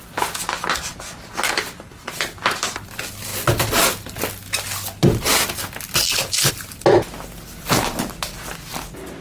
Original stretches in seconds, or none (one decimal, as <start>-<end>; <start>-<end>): 0.0-9.2